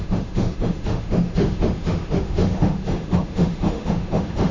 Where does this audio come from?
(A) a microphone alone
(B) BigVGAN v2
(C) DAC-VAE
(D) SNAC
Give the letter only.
C